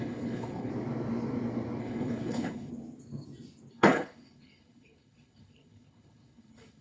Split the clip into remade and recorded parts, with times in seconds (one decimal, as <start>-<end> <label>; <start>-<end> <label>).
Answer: 0.0-0.7 remade; 0.7-1.8 recorded; 1.8-2.7 remade; 2.7-3.7 recorded; 3.7-6.8 remade